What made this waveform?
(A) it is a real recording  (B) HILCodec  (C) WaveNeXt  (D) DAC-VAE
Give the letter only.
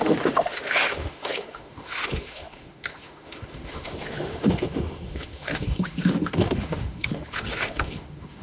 D